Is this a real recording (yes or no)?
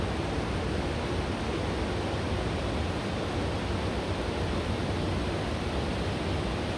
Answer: yes